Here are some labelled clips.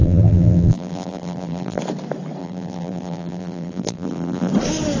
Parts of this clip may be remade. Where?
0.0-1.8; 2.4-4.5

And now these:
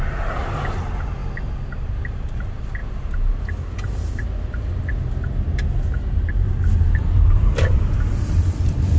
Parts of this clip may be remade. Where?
0.0-1.2; 1.8-2.8; 6.9-9.0

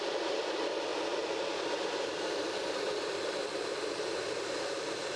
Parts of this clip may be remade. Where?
0.0-0.9; 3.4-5.2

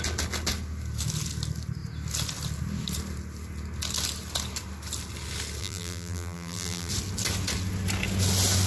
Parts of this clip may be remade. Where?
5.6-6.9

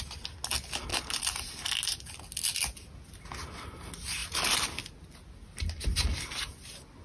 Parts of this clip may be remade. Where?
0.9-1.5; 4.2-5.0